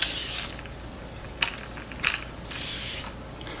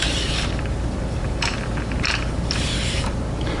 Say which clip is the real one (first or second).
first